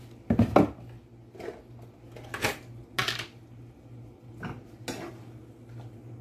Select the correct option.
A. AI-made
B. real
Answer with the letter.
B